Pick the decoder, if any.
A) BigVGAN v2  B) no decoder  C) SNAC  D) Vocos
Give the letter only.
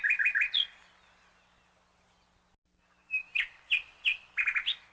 B